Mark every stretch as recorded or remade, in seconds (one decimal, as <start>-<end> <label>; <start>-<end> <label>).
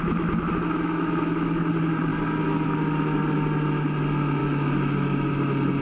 0.0-1.7 remade; 1.7-4.4 recorded; 4.4-5.3 remade; 5.3-5.8 recorded